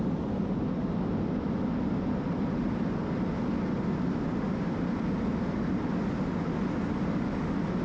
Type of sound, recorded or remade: recorded